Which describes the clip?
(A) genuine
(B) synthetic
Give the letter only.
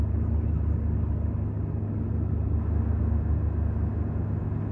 A